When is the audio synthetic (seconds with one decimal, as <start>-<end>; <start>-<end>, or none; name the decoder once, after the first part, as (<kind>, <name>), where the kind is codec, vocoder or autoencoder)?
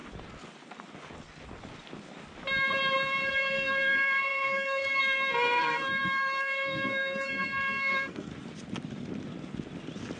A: 3.3-8.3 (codec, SNAC)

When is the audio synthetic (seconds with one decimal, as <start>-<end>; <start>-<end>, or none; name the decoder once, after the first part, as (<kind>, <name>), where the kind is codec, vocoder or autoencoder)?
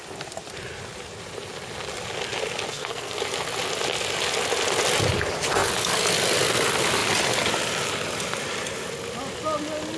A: 2.7-3.2 (codec, SNAC)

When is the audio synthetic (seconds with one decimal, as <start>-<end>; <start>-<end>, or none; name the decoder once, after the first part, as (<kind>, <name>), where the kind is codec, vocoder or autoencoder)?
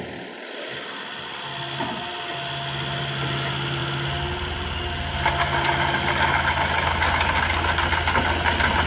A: none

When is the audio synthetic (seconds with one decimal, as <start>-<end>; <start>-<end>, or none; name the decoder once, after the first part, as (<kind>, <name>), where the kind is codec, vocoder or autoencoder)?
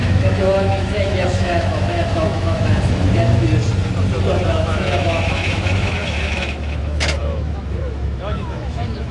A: 0.0-3.5 (autoencoder, DAC-VAE); 4.5-9.1